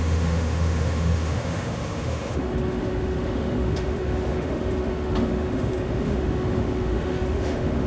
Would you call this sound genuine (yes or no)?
no